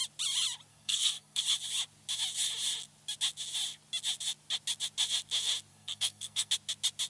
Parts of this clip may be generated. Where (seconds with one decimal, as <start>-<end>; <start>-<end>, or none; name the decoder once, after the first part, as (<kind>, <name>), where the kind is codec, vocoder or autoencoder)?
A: 0.7-1.4 (codec, SNAC); 5.7-6.5